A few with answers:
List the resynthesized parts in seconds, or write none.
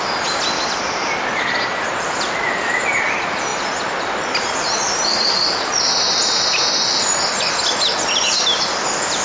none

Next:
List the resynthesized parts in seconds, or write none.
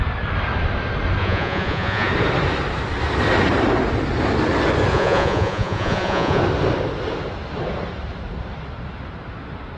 1.2-2.1 (vocoder, Vocos); 4.9-6.4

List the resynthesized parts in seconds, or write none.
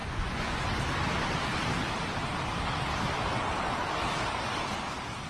0.0-0.8 (vocoder, Vocos)